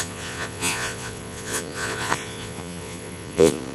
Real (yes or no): no